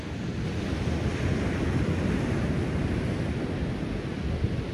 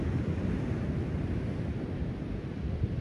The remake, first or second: second